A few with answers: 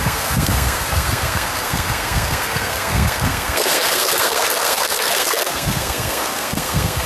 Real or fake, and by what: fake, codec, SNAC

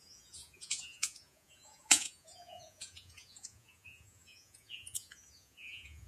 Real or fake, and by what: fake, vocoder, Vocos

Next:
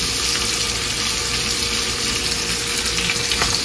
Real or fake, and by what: real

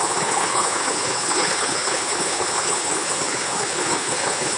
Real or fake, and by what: fake, codec, HILCodec